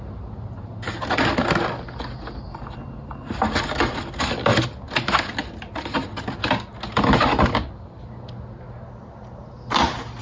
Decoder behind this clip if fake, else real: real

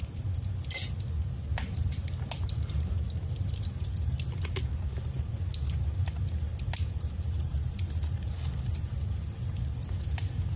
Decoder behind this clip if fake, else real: real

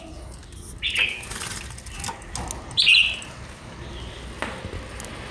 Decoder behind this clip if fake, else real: real